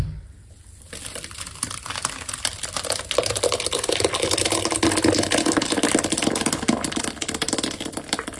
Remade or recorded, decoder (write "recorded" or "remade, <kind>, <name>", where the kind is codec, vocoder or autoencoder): recorded